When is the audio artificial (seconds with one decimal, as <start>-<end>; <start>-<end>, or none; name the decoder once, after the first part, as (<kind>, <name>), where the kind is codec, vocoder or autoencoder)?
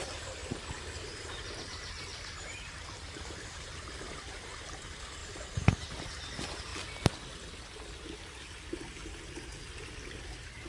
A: 0.0-0.4 (vocoder, BigVGAN v2); 1.6-6.7